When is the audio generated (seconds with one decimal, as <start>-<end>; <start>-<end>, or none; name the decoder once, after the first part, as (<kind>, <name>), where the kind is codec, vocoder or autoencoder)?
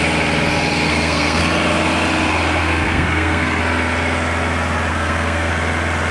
0.9-1.4 (codec, SNAC); 2.6-3.6; 4.9-5.5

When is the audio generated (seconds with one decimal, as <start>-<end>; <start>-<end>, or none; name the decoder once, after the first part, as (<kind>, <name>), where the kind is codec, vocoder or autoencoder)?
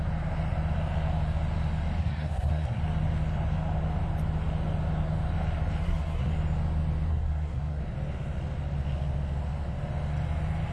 2.0-2.8 (codec, SNAC); 5.8-6.3; 7.1-7.8